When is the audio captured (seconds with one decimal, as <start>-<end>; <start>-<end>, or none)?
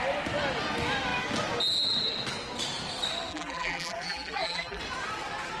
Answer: 0.0-3.3; 4.8-5.6